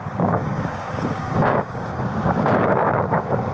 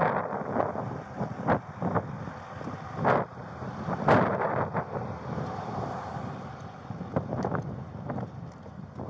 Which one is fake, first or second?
first